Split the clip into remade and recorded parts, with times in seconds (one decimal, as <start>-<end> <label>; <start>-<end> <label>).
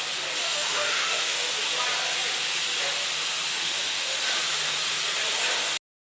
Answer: 0.0-0.4 recorded; 0.4-1.5 remade; 1.5-3.5 recorded; 3.5-4.2 remade; 4.2-6.1 recorded